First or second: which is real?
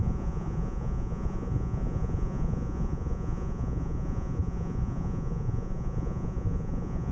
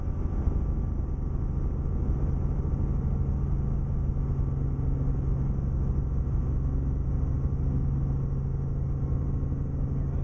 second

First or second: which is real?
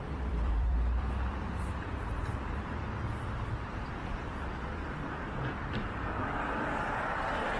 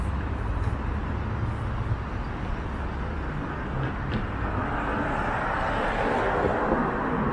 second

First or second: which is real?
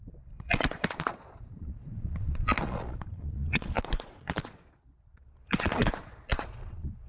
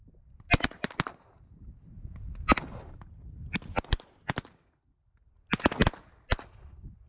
second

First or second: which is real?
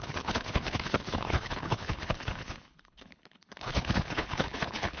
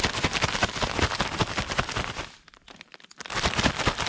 second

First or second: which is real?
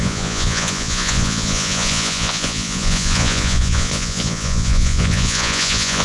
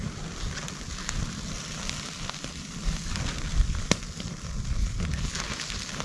second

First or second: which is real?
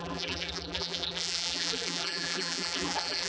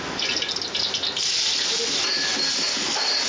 second